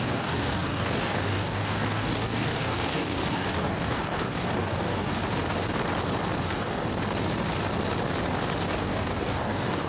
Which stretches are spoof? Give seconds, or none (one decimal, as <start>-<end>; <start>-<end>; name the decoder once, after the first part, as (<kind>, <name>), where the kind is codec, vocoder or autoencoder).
0.0-5.2 (codec, DAC); 6.4-6.9; 8.8-9.9